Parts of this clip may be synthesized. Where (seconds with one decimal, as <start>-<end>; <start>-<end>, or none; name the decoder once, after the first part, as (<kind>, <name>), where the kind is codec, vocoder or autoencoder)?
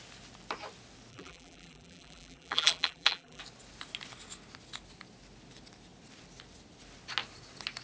1.1-3.4 (vocoder, BigVGAN v2)